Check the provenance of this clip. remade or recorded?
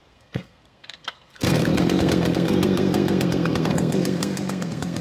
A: remade